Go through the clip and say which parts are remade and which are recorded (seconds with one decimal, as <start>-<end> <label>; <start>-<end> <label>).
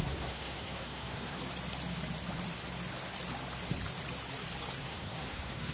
0.0-1.4 remade; 1.4-4.8 recorded; 4.8-5.7 remade